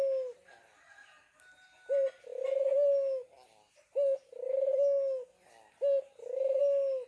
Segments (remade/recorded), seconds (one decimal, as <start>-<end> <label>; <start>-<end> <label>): 0.0-7.1 recorded